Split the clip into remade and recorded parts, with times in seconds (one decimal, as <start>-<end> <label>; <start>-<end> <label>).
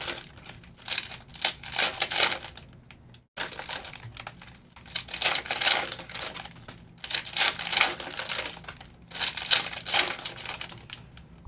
0.0-11.5 recorded